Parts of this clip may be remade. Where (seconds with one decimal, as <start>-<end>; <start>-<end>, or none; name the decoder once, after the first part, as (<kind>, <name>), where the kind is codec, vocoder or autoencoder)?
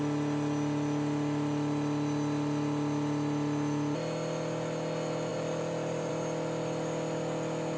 5.3-6.1 (vocoder, BigVGAN v2)